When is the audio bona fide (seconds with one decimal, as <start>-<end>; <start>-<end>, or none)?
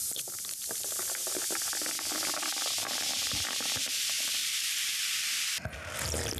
1.7-2.8; 3.9-4.4; 5.0-6.4